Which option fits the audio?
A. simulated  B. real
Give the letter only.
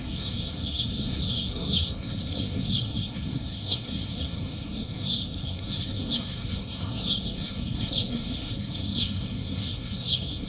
A